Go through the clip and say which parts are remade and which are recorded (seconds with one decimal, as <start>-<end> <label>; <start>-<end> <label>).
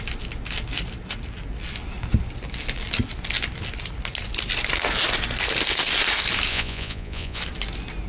0.0-6.5 recorded; 6.5-7.4 remade; 7.4-8.1 recorded